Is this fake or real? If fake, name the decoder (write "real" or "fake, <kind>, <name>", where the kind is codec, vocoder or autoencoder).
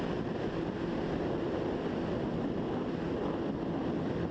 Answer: real